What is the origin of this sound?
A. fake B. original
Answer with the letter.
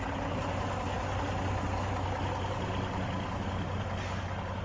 B